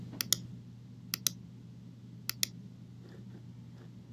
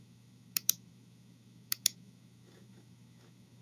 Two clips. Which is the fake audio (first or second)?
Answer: second